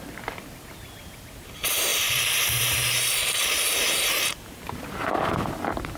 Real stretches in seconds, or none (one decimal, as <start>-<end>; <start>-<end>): 0.0-1.9; 5.5-6.0